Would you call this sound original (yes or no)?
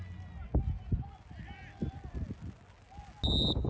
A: yes